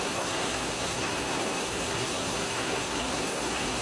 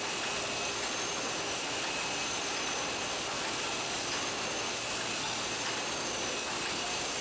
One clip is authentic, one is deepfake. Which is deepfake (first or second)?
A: first